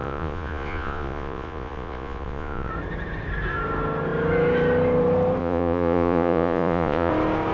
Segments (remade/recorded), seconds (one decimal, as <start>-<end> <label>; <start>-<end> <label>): 0.0-2.7 remade; 2.7-5.4 recorded; 5.4-7.1 remade; 7.1-7.5 recorded